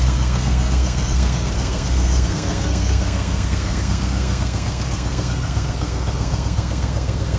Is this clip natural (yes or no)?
no